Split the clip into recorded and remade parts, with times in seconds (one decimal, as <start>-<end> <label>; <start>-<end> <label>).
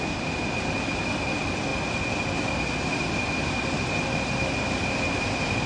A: 0.0-5.7 recorded